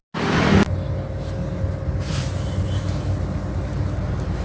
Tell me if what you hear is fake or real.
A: real